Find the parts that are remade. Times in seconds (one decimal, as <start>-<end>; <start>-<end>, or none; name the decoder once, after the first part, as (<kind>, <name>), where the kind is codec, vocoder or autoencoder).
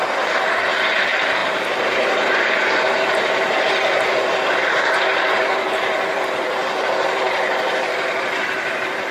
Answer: 0.0-9.1 (vocoder, BigVGAN v2)